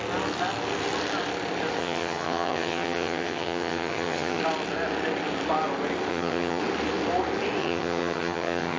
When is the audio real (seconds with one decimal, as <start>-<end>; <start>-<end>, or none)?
0.0-1.8; 4.4-6.1; 6.6-7.6